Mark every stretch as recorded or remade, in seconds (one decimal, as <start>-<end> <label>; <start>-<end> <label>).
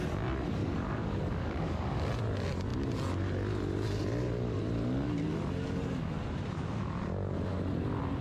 0.0-0.6 recorded; 0.6-2.1 remade; 2.1-8.2 recorded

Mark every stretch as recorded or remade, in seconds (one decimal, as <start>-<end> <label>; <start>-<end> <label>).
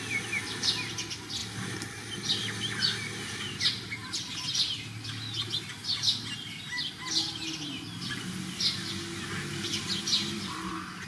0.0-11.1 recorded